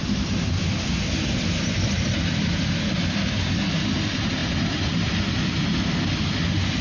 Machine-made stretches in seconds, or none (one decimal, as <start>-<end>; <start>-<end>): none